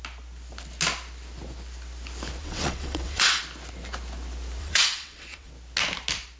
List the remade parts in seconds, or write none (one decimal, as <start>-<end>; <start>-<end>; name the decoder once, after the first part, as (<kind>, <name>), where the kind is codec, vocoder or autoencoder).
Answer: 2.4-3.4 (vocoder, WaveNeXt); 4.6-5.5